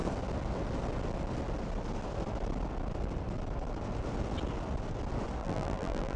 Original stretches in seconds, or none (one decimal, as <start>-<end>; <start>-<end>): 0.0-5.4